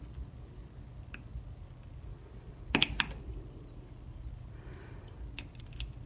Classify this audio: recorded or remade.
recorded